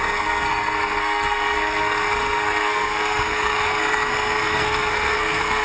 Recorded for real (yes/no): no